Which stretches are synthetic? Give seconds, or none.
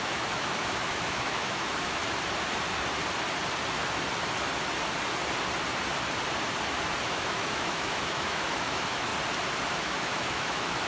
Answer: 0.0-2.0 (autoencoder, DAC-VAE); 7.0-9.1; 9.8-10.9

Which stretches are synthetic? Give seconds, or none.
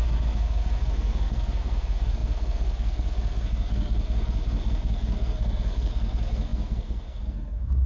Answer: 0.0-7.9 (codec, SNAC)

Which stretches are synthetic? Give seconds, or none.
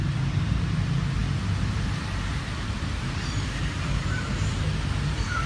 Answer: 0.0-1.2 (vocoder, BigVGAN v2); 1.7-5.5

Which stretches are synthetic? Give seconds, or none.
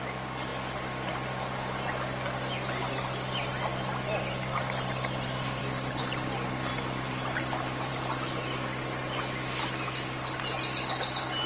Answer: none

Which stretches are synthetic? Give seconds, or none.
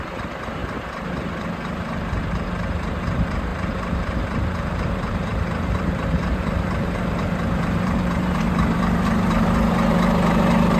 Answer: 0.0-10.8 (vocoder, BigVGAN v2)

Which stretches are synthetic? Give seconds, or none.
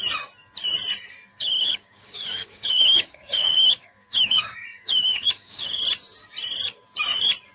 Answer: 1.3-5.8 (codec, DAC)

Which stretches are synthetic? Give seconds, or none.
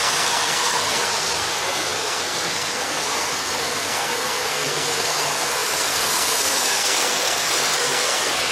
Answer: 0.0-8.5 (codec, SNAC)